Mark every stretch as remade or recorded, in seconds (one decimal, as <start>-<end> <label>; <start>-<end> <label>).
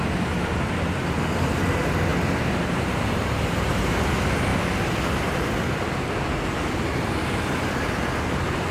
0.0-2.1 recorded; 2.1-4.0 remade; 4.0-8.7 recorded